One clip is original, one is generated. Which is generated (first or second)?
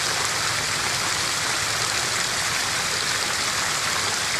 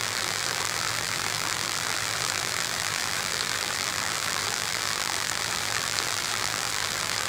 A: second